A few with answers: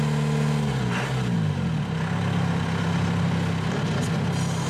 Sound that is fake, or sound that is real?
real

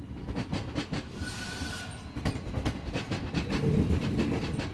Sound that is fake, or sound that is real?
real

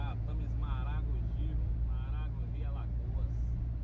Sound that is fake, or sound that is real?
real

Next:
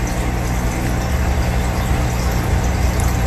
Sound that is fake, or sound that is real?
real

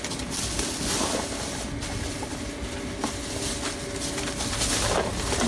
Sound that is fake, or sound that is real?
real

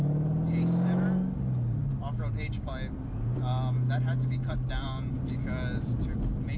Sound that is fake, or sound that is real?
real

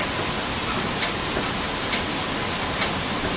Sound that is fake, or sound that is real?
real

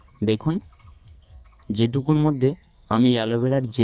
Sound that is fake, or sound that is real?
fake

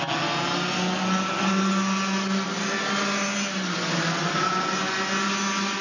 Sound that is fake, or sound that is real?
real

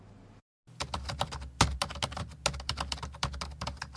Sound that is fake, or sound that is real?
real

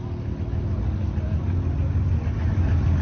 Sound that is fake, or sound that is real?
real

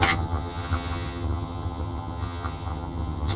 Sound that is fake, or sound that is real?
fake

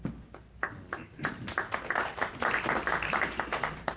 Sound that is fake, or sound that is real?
real